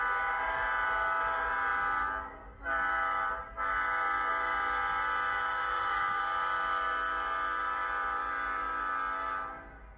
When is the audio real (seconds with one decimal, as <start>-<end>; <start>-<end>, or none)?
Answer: 0.0-5.3; 6.2-10.0